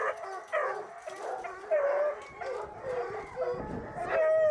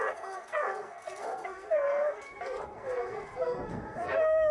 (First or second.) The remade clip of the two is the second